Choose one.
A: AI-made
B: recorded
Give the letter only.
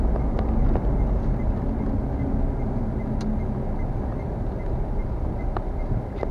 B